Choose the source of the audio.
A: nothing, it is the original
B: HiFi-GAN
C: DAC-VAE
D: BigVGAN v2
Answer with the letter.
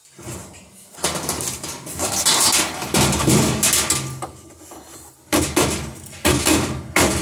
A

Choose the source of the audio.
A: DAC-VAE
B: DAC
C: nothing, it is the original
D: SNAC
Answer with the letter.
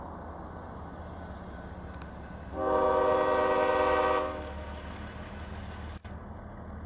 C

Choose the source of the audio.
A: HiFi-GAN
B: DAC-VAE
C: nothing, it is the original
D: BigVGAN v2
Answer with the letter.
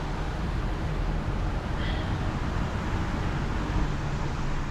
C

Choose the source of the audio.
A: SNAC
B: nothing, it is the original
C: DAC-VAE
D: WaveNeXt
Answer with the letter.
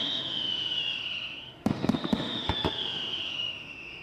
C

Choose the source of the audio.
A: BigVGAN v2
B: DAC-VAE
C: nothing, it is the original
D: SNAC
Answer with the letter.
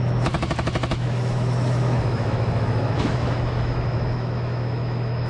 B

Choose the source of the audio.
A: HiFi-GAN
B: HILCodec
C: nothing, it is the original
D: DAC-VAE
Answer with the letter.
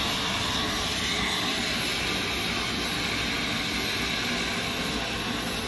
C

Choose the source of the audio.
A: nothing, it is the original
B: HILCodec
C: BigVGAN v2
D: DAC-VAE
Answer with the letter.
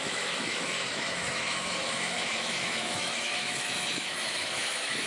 D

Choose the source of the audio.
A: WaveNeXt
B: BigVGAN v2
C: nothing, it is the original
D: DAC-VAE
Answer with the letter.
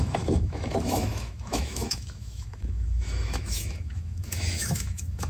D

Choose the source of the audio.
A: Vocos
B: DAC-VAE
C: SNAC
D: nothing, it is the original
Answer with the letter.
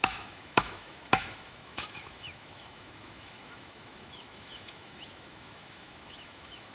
B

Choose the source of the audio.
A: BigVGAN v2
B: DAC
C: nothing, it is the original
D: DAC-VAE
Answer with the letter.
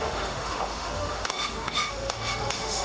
D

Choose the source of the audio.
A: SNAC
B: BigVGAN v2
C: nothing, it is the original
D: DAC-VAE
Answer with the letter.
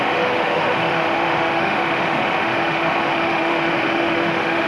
D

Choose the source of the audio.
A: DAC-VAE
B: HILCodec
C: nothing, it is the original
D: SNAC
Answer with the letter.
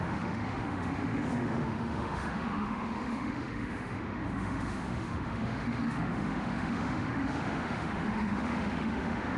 A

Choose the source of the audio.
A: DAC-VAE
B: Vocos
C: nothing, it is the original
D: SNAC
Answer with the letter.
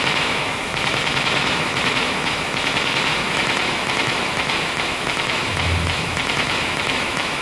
A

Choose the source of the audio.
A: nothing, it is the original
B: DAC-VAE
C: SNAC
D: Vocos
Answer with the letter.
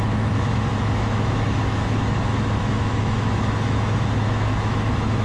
B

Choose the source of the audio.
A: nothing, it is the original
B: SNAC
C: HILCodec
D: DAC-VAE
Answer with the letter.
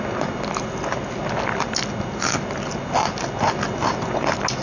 A